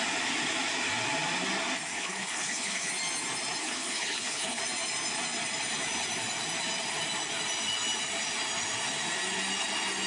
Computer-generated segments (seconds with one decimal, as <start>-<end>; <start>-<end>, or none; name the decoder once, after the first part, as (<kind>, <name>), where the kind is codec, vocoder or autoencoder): 1.9-2.9 (codec, HILCodec); 3.6-4.6